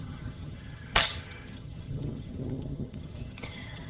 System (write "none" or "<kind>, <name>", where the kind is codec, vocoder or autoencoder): vocoder, HiFi-GAN